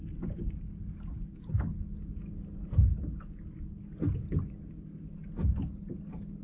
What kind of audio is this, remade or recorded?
recorded